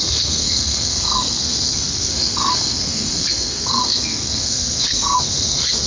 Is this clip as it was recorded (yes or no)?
no